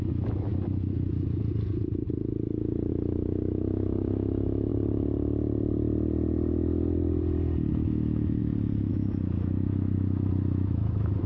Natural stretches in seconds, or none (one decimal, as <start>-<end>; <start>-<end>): 0.5-2.9; 4.7-7.7; 8.4-8.9